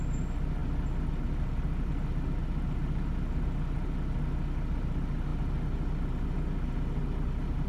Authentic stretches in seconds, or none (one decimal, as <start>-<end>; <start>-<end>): 0.0-7.7